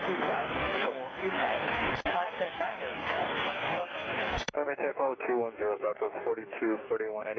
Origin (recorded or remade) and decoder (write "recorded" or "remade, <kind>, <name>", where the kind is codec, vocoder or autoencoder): remade, codec, DAC